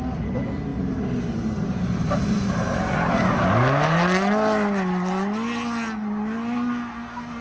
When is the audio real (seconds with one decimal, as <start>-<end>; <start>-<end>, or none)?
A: 0.0-7.4